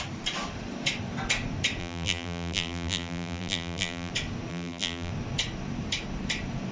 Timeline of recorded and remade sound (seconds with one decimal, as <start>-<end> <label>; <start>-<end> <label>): 0.0-1.8 recorded; 1.8-4.1 remade; 4.1-4.5 recorded; 4.5-5.1 remade; 5.1-6.7 recorded